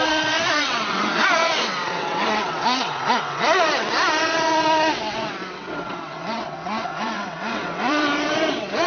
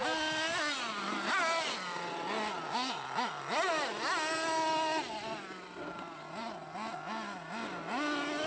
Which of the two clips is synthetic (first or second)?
first